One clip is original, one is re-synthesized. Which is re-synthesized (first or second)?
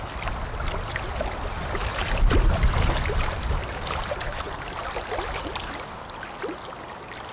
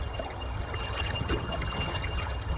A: second